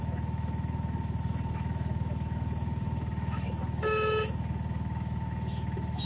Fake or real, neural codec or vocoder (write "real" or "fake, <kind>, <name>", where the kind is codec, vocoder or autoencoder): fake, autoencoder, DAC-VAE